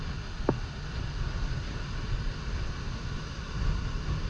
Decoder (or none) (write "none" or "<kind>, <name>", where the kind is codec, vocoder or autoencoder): none